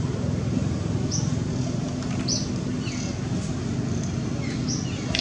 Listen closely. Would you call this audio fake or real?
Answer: real